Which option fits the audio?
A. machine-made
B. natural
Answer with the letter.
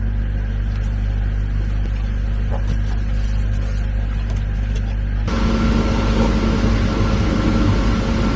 B